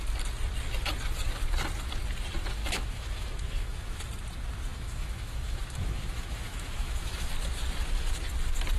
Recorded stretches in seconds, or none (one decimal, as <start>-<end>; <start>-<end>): 0.0-2.6; 4.0-4.7; 7.3-8.8